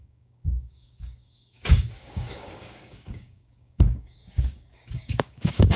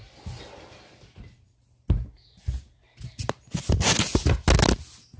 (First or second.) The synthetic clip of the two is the first